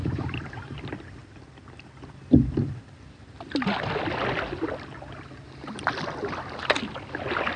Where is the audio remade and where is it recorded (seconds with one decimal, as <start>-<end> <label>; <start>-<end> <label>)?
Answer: 0.0-7.6 recorded